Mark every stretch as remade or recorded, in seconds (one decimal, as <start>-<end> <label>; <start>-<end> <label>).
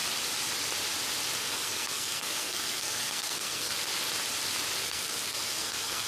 0.0-1.4 recorded; 1.4-3.7 remade; 3.7-4.8 recorded; 4.8-6.1 remade